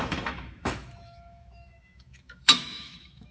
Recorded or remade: remade